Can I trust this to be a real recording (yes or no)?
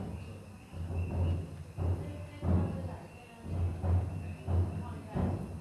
yes